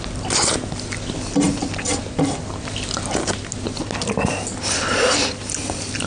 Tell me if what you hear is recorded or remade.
recorded